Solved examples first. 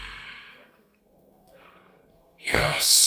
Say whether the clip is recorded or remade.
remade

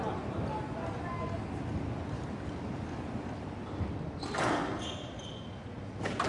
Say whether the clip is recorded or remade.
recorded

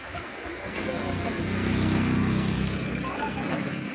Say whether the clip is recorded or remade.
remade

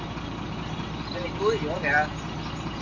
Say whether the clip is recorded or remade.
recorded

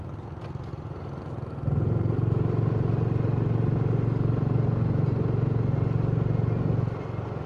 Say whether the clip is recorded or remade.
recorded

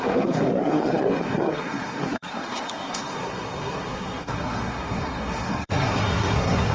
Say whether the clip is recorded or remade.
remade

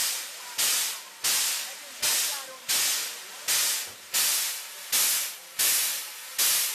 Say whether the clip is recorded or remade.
recorded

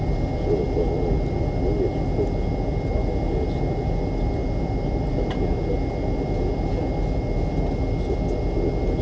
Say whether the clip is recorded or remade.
recorded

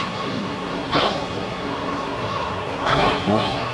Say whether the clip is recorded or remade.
remade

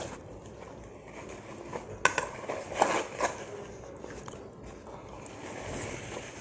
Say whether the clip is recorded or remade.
recorded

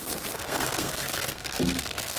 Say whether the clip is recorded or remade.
remade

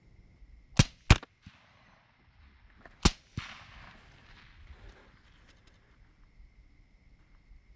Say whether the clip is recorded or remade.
recorded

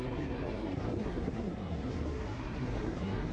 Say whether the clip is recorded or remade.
remade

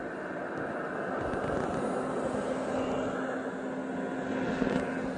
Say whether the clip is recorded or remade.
recorded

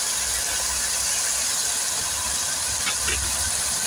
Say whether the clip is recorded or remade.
recorded